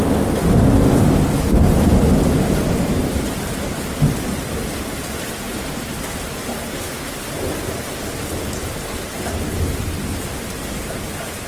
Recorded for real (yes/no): yes